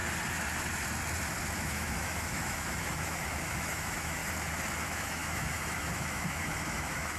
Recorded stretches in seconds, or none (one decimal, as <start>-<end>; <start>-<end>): 0.0-1.6; 4.2-4.8